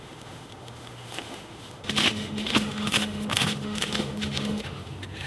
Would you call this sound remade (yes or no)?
yes